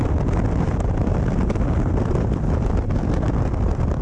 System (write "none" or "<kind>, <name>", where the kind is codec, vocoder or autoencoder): none